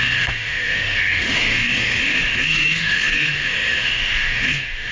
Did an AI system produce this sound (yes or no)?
yes